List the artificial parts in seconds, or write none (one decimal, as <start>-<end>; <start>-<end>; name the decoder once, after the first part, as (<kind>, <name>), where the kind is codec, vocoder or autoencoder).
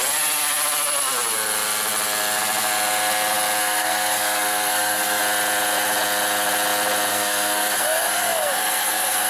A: 3.6-5.2 (codec, SNAC); 7.1-9.3